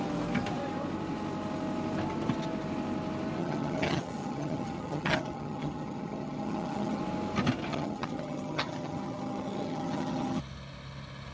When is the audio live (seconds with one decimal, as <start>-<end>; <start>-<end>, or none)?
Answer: 0.0-3.4; 7.0-7.7; 10.4-11.3